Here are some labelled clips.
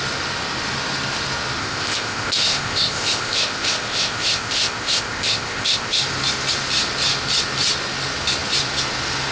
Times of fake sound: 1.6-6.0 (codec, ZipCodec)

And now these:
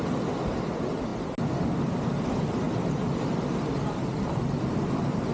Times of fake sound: none

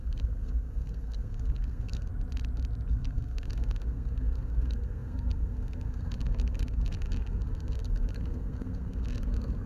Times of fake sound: 0.0-2.1 (codec, SNAC); 2.9-9.7

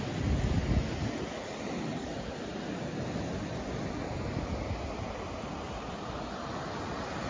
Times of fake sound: none